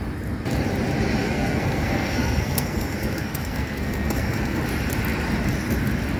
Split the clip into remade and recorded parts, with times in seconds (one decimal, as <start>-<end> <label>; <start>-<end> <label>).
0.0-1.2 recorded; 1.2-4.6 remade; 4.6-6.2 recorded